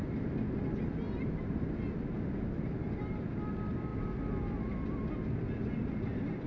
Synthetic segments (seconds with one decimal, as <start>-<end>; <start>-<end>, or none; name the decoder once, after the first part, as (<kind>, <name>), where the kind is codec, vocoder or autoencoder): none